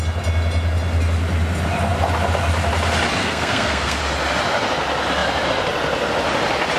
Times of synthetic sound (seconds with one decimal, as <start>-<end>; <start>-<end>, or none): 3.2-4.0

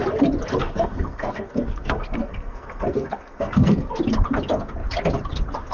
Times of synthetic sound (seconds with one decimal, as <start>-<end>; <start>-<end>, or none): 0.6-4.0

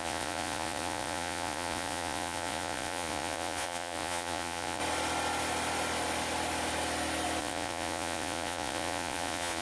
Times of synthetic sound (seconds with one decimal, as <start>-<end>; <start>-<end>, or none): 0.0-4.8; 7.4-9.6

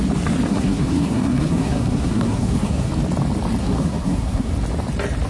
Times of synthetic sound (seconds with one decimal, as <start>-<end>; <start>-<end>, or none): 0.5-2.9; 3.6-4.5